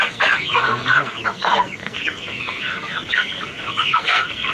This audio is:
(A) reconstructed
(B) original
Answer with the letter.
A